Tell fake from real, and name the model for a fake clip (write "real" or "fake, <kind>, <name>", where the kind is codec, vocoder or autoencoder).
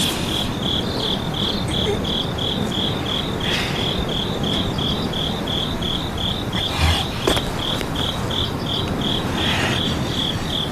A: real